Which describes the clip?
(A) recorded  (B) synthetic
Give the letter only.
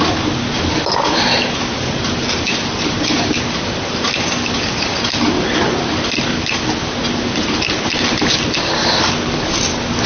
A